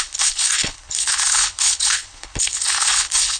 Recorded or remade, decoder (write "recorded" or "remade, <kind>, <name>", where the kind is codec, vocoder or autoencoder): remade, codec, HILCodec